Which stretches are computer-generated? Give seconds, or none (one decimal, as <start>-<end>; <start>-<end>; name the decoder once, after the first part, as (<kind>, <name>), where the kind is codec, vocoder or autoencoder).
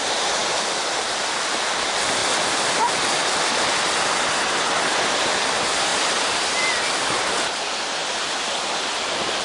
0.4-1.2 (vocoder, BigVGAN v2); 2.2-3.1; 5.9-7.2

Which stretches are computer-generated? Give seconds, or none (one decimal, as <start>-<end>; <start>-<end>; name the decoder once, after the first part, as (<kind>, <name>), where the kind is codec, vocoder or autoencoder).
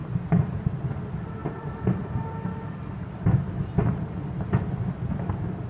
1.4-2.2 (vocoder, BigVGAN v2)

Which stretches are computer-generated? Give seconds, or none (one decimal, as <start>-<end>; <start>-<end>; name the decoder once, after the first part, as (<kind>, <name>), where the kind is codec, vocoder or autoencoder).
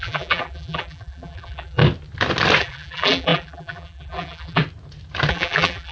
0.0-1.8 (vocoder, BigVGAN v2); 2.6-4.6; 5.3-5.9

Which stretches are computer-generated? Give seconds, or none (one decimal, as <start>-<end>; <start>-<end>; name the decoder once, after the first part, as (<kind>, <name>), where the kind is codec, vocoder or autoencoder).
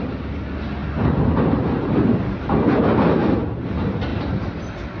4.1-5.0 (vocoder, BigVGAN v2)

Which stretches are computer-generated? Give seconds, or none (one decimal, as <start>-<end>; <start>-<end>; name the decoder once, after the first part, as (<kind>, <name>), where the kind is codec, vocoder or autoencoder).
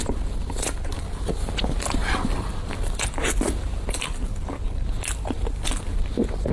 2.0-5.9 (vocoder, BigVGAN v2)